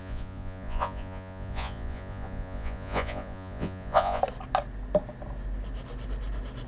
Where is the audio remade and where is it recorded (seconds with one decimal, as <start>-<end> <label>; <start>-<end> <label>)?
0.0-4.2 remade; 4.2-6.7 recorded

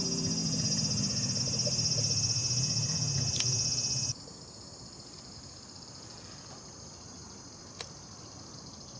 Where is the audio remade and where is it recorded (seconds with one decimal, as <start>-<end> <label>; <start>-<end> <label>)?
0.0-0.4 remade; 0.4-1.4 recorded; 1.4-2.4 remade; 2.4-6.5 recorded; 6.5-9.0 remade

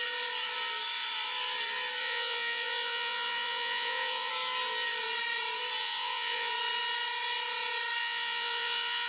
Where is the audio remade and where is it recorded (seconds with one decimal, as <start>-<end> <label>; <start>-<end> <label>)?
0.0-2.0 recorded; 2.0-4.3 remade; 4.3-5.8 recorded; 5.8-6.5 remade; 6.5-8.0 recorded; 8.0-9.1 remade

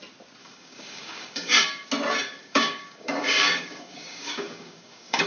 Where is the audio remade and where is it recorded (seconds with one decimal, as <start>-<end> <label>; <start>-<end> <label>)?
0.0-0.4 recorded; 0.4-1.9 remade; 1.9-2.4 recorded; 2.4-5.3 remade